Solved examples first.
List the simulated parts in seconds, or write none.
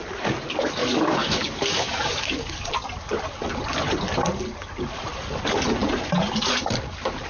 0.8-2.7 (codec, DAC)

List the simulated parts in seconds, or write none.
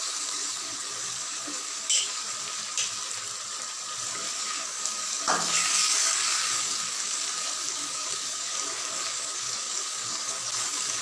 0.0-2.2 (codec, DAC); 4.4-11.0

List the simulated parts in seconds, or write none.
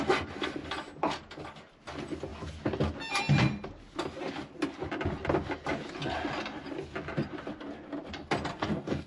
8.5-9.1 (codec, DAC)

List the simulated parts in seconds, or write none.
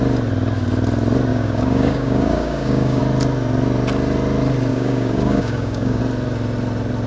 1.3-3.0 (codec, DAC); 4.7-6.0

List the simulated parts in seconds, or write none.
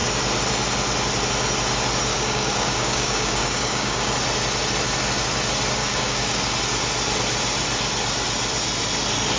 2.1-4.1 (codec, DAC); 5.8-6.4